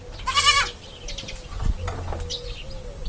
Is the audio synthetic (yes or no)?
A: no